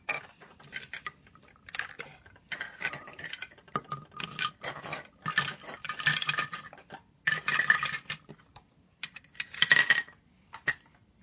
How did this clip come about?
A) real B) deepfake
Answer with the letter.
B